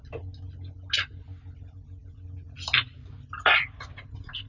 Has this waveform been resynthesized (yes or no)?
no